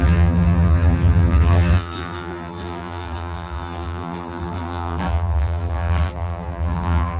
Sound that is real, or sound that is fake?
fake